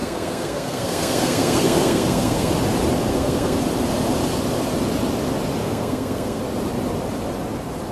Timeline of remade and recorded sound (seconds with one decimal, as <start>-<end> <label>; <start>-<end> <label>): 0.0-2.5 remade; 2.5-3.1 recorded; 3.1-3.6 remade; 3.6-5.6 recorded; 5.6-6.4 remade; 6.4-7.9 recorded